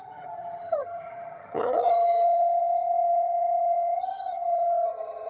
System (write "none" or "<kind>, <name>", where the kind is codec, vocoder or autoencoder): vocoder, HiFi-GAN